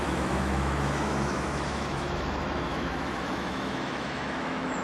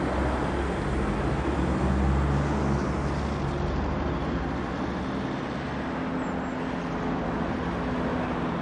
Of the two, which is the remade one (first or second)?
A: first